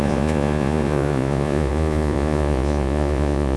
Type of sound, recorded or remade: remade